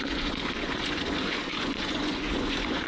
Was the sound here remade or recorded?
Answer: remade